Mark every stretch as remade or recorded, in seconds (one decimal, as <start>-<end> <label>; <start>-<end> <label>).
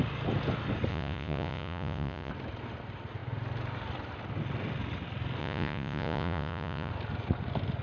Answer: 0.0-0.9 recorded; 0.9-2.3 remade; 2.3-5.4 recorded; 5.4-6.9 remade; 6.9-7.8 recorded